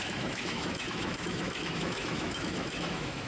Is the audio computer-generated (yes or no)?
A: yes